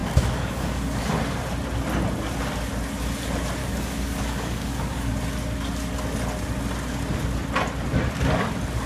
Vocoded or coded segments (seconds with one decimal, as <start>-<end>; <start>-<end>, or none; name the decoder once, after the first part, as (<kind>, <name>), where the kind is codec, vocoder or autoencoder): 0.0-1.0 (codec, DAC); 3.6-5.1